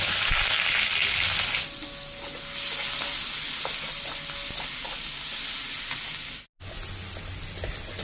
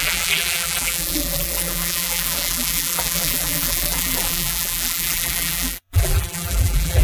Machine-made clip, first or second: second